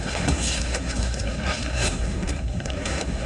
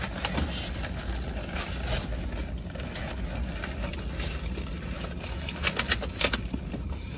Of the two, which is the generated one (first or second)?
first